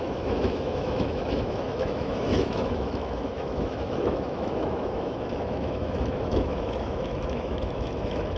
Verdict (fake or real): fake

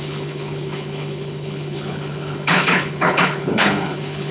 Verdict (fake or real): fake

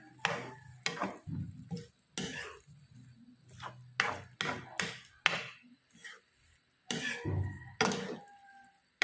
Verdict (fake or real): real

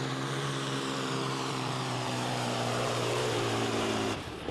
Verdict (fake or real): fake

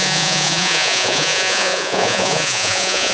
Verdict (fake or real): fake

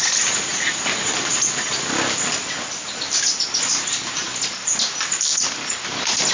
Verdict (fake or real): real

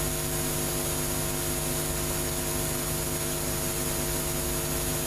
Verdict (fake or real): real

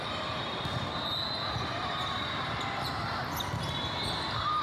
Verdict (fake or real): real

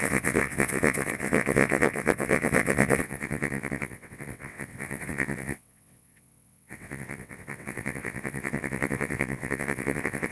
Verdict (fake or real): fake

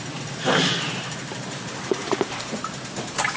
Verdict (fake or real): fake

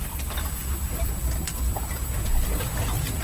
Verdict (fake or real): real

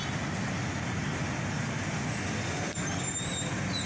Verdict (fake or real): real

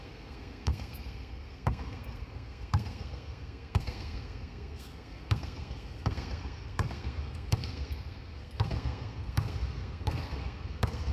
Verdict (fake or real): fake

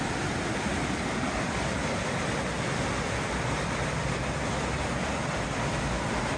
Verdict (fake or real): real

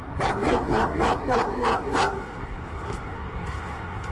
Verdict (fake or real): fake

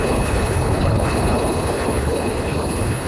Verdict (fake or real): fake